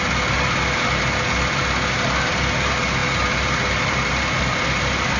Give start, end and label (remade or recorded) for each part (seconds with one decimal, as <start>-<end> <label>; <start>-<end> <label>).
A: 0.0-5.2 recorded

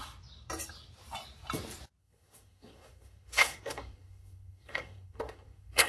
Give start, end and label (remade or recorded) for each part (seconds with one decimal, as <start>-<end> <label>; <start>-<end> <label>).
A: 0.0-2.0 recorded; 2.0-5.9 remade

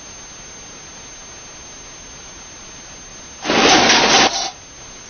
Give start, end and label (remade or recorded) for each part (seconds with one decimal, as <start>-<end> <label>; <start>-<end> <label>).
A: 0.0-5.1 recorded

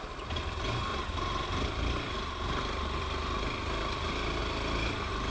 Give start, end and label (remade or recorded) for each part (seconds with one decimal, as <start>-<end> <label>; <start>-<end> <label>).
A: 0.0-0.9 recorded; 0.9-3.0 remade; 3.0-4.4 recorded; 4.4-5.3 remade